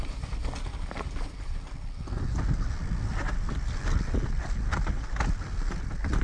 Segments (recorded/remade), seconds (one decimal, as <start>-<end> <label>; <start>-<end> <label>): 0.0-0.7 recorded; 0.7-1.6 remade; 1.6-6.2 recorded